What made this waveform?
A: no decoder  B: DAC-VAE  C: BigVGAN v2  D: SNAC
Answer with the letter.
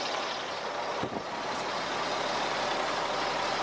A